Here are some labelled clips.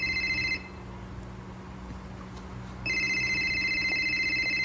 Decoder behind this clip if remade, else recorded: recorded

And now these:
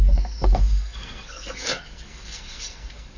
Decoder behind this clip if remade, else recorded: remade, codec, SNAC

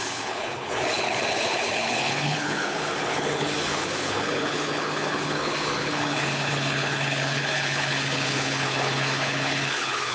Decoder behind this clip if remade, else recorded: remade, codec, HILCodec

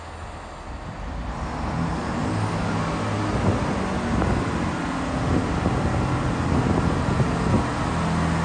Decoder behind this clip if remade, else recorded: recorded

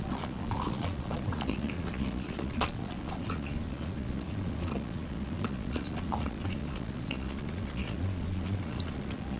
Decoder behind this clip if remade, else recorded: remade, vocoder, Vocos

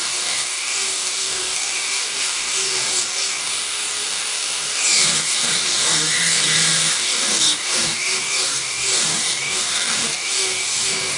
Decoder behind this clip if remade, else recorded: remade, codec, DAC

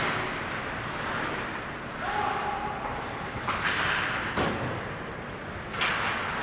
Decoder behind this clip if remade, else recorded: recorded